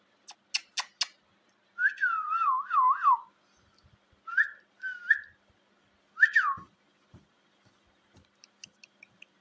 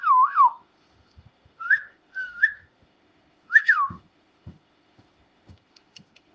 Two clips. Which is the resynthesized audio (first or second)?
second